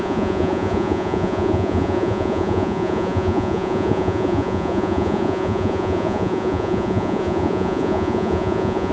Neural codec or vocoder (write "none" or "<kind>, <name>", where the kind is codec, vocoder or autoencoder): vocoder, Vocos